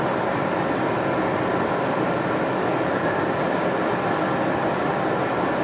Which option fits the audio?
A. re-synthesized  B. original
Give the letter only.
B